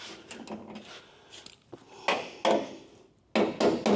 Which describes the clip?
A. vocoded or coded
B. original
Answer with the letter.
B